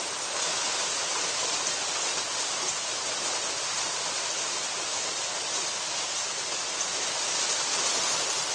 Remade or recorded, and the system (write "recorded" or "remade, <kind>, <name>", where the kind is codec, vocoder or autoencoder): recorded